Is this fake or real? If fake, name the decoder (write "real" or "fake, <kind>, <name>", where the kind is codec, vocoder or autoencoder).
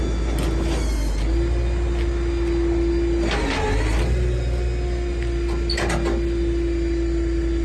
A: real